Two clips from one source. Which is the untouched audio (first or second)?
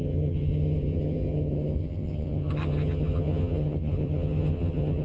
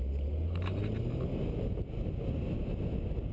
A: second